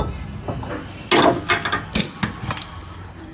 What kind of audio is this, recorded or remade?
recorded